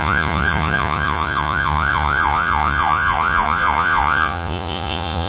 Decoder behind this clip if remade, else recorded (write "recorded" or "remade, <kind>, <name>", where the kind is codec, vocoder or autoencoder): remade, vocoder, Vocos